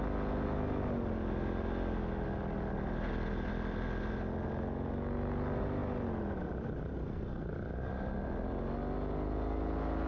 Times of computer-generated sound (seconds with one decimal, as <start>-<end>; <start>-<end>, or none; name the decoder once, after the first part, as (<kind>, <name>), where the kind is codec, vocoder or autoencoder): 6.9-7.5 (codec, SNAC)